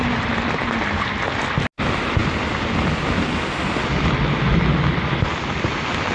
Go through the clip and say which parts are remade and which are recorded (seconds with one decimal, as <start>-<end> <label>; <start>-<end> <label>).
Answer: 0.0-6.1 recorded